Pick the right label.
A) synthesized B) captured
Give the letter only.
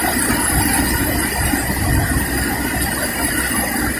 B